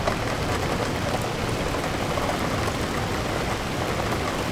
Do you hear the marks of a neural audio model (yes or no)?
no